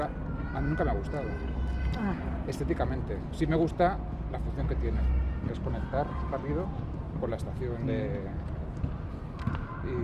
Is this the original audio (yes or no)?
yes